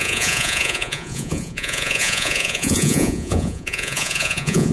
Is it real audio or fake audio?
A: fake